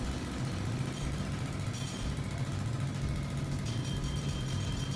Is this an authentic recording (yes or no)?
yes